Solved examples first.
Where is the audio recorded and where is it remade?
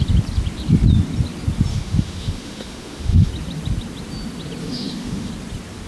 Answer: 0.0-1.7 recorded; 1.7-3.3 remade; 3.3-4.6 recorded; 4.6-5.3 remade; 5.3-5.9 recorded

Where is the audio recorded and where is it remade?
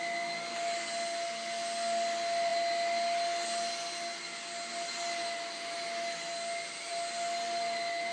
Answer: 0.0-8.1 recorded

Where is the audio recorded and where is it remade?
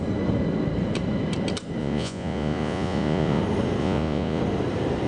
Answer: 0.0-1.8 recorded; 1.8-3.4 remade; 3.4-3.8 recorded; 3.8-4.4 remade; 4.4-5.1 recorded